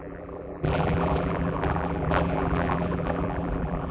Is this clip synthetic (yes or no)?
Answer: yes